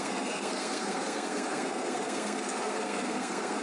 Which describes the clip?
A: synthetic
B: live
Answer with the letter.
A